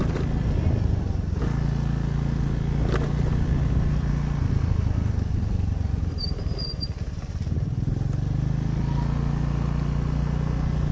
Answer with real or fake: real